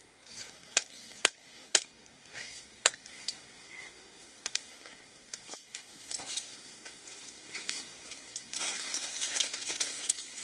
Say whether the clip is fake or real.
fake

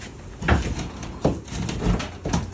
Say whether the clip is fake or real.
real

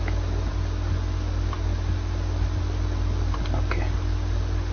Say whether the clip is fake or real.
real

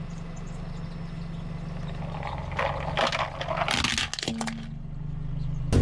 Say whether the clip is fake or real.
real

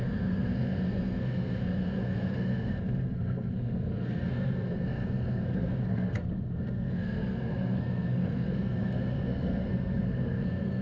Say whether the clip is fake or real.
fake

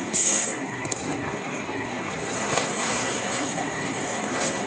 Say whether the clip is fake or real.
fake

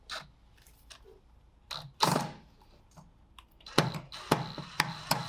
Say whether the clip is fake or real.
real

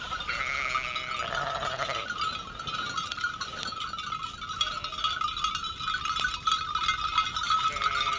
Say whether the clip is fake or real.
real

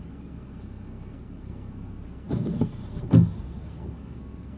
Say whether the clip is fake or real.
fake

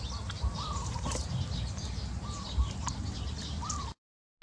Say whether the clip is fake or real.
real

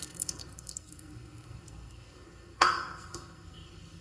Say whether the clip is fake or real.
fake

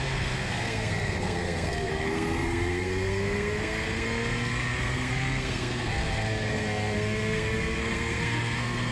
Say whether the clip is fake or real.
fake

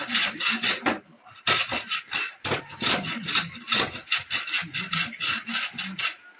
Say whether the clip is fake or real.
real